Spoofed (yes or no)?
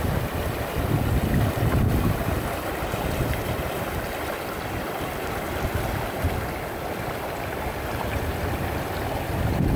no